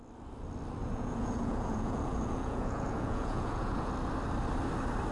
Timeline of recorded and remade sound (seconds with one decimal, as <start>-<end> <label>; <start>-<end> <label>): 0.0-0.8 recorded; 0.8-3.9 remade; 3.9-5.1 recorded